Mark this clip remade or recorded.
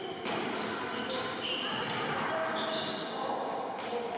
recorded